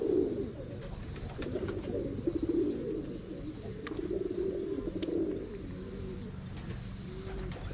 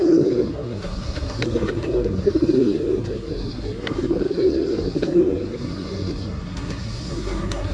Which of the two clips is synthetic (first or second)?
second